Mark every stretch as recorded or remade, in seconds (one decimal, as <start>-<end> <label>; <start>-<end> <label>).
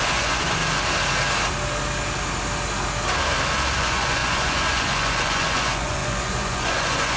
0.0-0.6 remade; 0.6-3.8 recorded; 3.8-7.2 remade